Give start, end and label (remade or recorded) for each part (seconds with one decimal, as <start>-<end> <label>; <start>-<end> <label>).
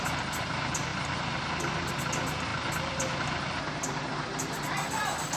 0.0-5.4 recorded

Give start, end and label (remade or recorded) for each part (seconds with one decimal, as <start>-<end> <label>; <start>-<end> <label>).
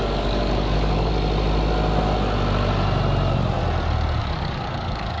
0.0-1.1 remade; 1.1-4.2 recorded; 4.2-5.2 remade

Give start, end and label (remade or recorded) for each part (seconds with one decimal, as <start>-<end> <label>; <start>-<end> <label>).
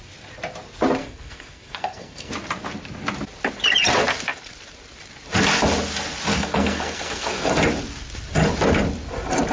0.0-1.0 recorded; 1.0-2.3 remade; 2.3-6.3 recorded; 6.3-7.5 remade; 7.5-9.5 recorded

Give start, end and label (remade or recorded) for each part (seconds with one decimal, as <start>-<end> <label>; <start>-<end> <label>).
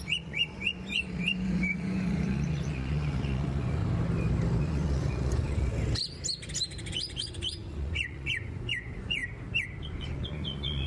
0.0-3.8 remade; 3.8-4.6 recorded; 4.6-5.7 remade; 5.7-6.9 recorded; 6.9-9.2 remade; 9.2-9.8 recorded; 9.8-10.9 remade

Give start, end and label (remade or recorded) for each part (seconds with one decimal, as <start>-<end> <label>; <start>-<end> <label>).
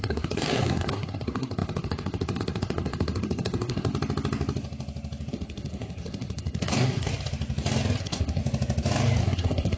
0.0-3.9 remade; 3.9-5.3 recorded; 5.3-7.1 remade; 7.1-8.0 recorded; 8.0-8.4 remade; 8.4-9.2 recorded; 9.2-9.8 remade